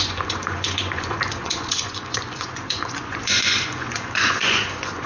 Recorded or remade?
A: remade